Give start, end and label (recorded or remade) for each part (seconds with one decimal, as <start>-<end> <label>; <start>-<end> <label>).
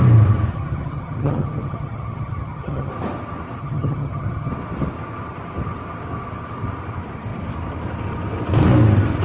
0.0-0.5 recorded; 0.5-2.9 remade; 2.9-3.6 recorded; 3.6-4.5 remade; 4.5-9.2 recorded